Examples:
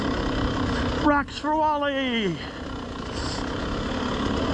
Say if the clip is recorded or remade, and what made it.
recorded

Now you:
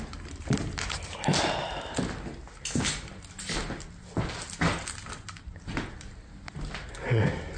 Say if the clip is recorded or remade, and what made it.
recorded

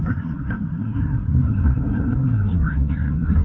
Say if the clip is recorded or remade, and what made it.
remade, codec, SNAC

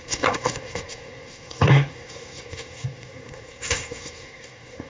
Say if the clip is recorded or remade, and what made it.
remade, codec, SNAC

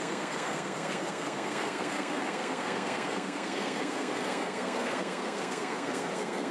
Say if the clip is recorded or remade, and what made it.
remade, codec, SNAC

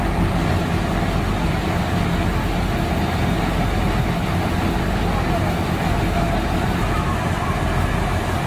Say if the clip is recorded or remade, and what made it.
recorded